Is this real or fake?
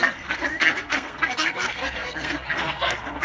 fake